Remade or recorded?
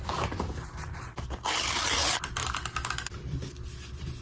recorded